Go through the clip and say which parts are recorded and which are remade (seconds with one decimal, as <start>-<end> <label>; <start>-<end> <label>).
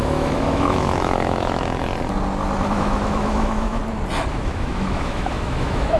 0.0-1.9 remade; 1.9-2.7 recorded; 2.7-3.8 remade; 3.8-4.3 recorded; 4.3-6.0 remade